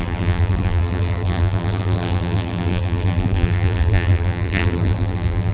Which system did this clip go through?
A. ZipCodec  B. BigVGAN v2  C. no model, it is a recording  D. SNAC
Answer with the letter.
B